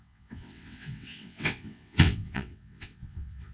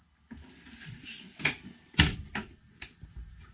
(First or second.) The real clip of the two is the second